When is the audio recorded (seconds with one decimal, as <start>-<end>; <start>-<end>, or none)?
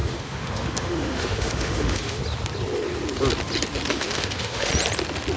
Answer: 2.2-3.9; 4.7-5.4